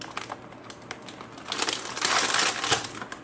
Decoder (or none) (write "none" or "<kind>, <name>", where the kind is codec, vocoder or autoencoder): none